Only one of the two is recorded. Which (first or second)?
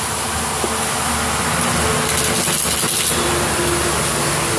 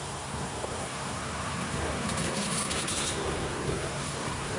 first